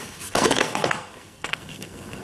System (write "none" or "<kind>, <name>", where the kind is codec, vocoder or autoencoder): codec, SNAC